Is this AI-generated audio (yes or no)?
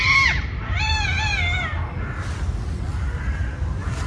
no